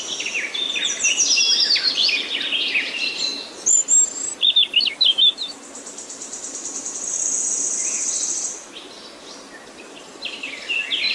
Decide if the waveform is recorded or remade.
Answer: recorded